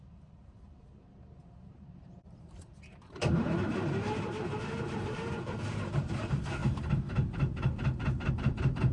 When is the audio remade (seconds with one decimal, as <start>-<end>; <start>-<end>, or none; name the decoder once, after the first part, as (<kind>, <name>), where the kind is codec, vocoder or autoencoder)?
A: 0.0-6.6 (vocoder, BigVGAN v2); 8.3-8.9